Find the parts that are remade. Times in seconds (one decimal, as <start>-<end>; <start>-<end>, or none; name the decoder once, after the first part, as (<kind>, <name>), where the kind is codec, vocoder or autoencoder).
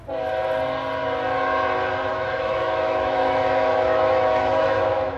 2.1-5.2 (autoencoder, DAC-VAE)